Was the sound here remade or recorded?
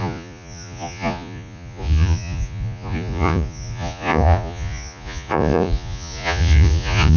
remade